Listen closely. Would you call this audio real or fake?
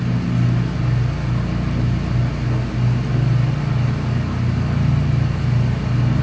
real